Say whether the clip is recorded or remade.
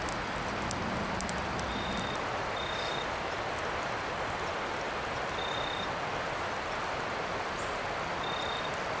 recorded